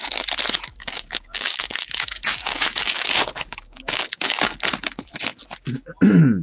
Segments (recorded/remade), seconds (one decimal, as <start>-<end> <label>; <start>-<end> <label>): 0.0-0.8 recorded; 0.8-4.6 remade; 4.6-6.4 recorded